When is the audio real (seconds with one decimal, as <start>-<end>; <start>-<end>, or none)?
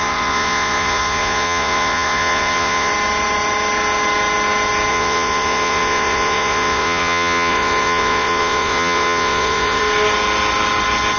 2.9-4.9; 9.8-11.2